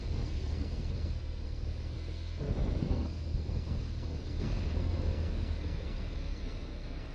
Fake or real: fake